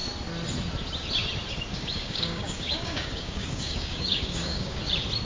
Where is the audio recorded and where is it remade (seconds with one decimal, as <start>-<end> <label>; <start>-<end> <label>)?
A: 0.0-1.7 recorded; 1.7-4.8 remade; 4.8-5.2 recorded